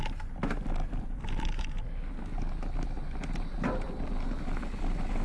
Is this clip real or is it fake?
real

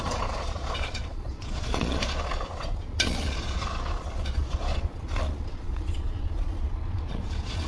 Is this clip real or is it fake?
fake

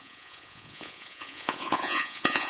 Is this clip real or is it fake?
fake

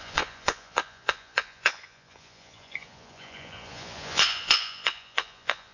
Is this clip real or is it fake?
fake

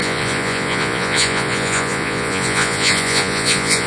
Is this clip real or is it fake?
fake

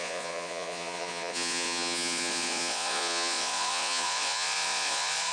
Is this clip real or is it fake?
fake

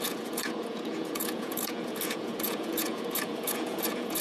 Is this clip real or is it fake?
fake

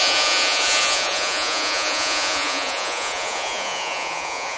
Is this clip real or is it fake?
fake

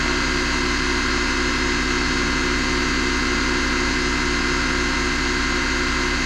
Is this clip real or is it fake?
real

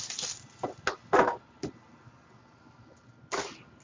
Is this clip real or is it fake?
real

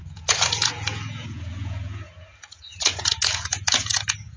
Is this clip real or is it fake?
fake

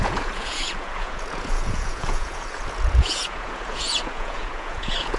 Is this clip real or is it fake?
fake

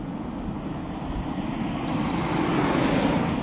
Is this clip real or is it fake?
real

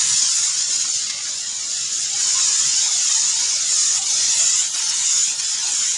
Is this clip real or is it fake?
fake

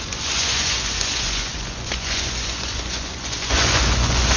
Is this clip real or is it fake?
fake